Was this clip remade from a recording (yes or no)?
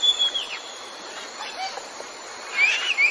yes